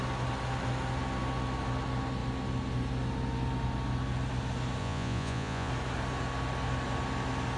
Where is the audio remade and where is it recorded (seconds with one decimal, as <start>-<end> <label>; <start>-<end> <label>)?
0.0-4.8 recorded; 4.8-5.7 remade; 5.7-7.6 recorded